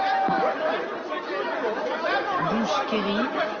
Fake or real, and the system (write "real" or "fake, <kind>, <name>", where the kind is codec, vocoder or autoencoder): real